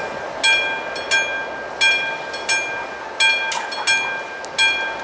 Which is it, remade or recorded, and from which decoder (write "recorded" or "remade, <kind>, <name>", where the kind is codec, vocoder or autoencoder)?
recorded